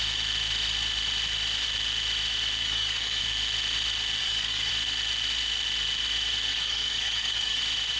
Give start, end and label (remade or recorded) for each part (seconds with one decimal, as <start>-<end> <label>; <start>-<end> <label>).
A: 0.0-2.6 recorded; 2.6-3.2 remade; 3.2-4.2 recorded; 4.2-4.7 remade; 4.7-6.5 recorded; 6.5-7.6 remade; 7.6-8.0 recorded